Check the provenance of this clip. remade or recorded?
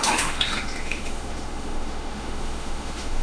remade